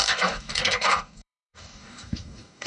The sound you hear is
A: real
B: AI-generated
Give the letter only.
B